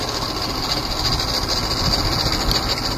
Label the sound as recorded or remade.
recorded